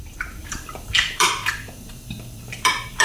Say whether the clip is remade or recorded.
remade